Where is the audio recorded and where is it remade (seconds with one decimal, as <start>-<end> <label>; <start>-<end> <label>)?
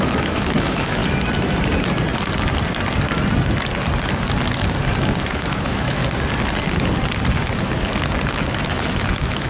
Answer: 0.0-1.0 remade; 1.0-5.2 recorded; 5.2-6.0 remade; 6.0-8.3 recorded; 8.3-9.5 remade